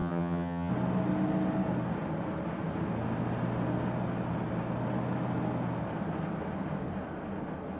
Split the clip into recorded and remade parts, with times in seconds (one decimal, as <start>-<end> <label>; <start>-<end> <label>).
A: 0.0-0.7 remade; 0.7-7.8 recorded

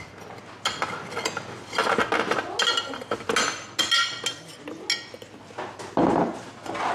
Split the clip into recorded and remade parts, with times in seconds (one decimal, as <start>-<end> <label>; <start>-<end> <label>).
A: 0.0-6.9 recorded

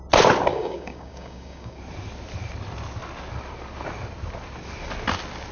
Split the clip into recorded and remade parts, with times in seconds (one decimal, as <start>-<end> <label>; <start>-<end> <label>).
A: 0.0-0.5 recorded; 0.5-1.8 remade; 1.8-5.5 recorded

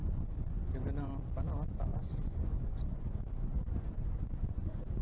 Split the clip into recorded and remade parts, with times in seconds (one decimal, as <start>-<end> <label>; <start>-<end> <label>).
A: 0.0-0.7 remade; 0.7-1.9 recorded; 1.9-5.0 remade

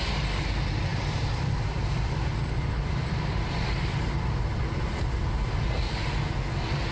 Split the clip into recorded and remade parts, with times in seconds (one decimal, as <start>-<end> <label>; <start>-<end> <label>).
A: 0.0-0.9 recorded; 0.9-5.0 remade; 5.0-6.9 recorded